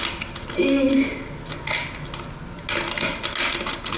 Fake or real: real